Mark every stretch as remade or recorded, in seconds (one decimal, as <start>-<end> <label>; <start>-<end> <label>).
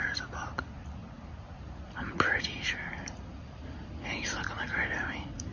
0.0-1.0 recorded; 1.0-1.8 remade; 1.8-5.5 recorded